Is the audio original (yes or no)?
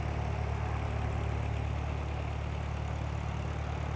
yes